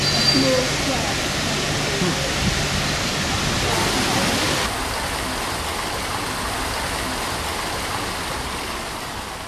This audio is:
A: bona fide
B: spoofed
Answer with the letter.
A